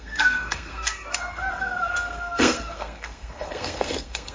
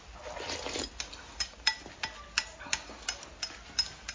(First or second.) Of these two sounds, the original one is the second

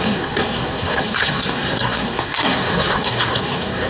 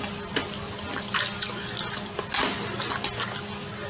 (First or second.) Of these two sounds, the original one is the second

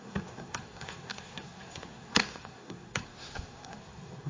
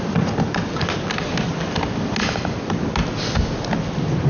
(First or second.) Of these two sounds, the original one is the second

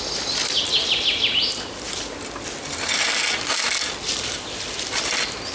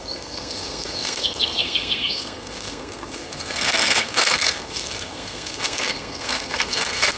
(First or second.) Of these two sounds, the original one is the first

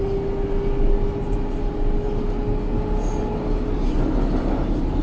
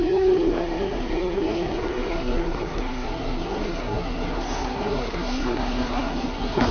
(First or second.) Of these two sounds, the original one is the first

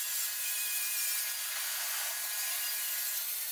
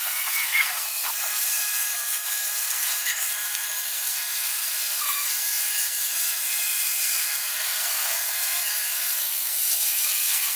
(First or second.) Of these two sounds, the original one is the first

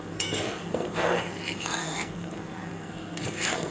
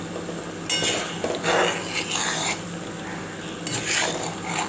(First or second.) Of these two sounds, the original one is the second